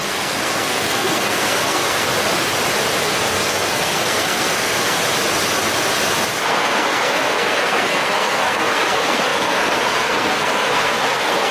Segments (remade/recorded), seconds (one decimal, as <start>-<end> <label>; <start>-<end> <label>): 0.0-2.1 remade; 2.1-3.0 recorded; 3.0-5.0 remade; 5.0-6.4 recorded; 6.4-11.5 remade